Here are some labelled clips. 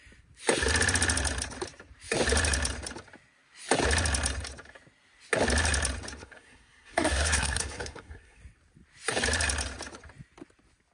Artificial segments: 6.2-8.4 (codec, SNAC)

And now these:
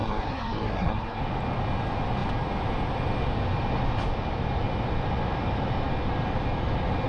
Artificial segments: 0.0-1.2 (codec, SNAC)